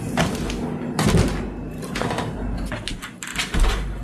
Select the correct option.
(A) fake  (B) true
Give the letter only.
B